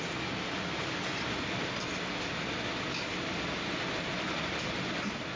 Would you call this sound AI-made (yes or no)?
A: no